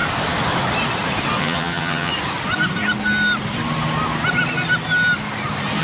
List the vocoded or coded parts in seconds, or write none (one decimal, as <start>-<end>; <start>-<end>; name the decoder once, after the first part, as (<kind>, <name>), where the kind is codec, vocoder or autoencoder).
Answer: 1.4-2.1 (vocoder, HiFi-GAN)